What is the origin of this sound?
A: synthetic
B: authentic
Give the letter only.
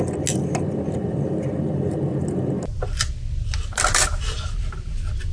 B